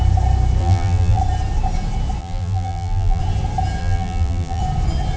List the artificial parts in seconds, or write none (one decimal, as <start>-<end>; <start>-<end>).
0.6-1.2; 2.2-3.2; 3.8-4.6